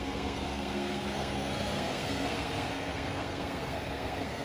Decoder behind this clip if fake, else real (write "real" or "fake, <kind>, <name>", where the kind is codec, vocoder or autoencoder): fake, codec, SNAC